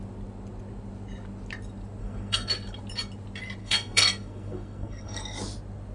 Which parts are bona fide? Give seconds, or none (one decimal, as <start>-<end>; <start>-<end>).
0.0-2.0; 2.5-3.6; 5.2-5.9